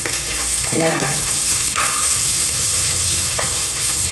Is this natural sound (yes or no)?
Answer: no